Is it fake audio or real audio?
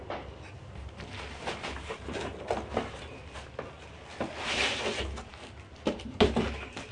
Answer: real